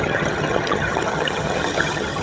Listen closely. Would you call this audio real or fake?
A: fake